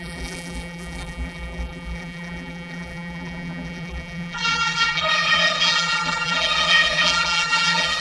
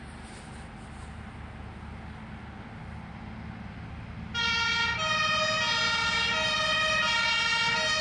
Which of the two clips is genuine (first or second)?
second